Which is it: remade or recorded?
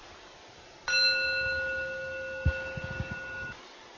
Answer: recorded